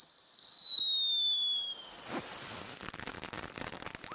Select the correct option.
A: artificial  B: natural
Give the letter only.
B